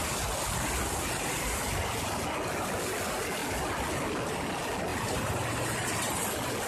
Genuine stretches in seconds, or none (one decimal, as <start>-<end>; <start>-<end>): 0.0-4.9; 6.2-6.7